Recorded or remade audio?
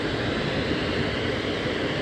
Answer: remade